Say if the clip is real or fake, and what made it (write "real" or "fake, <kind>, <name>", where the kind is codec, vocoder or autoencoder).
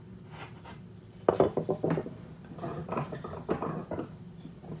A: real